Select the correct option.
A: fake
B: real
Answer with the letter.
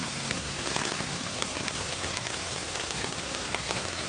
A